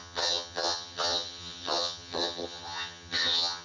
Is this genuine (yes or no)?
no